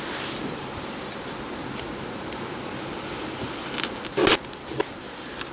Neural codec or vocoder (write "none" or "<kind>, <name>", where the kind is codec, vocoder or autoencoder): none